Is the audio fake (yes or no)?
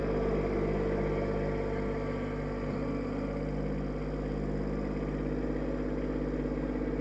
no